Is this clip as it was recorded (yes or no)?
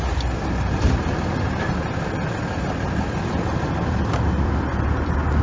yes